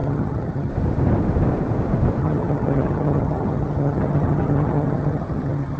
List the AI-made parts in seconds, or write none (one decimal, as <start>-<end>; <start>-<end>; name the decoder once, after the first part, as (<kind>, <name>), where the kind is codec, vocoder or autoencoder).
0.0-0.7 (vocoder, HiFi-GAN); 2.2-5.8